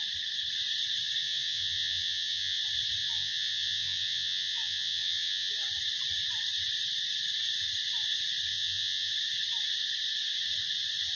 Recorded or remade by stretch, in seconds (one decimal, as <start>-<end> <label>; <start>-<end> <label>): 0.0-1.2 recorded; 1.2-2.6 remade; 2.6-3.0 recorded; 3.0-5.5 remade; 5.5-8.5 recorded; 8.5-9.1 remade; 9.1-11.2 recorded